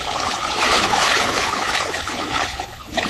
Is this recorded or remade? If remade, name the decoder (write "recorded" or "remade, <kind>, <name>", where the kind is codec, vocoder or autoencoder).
remade, codec, HILCodec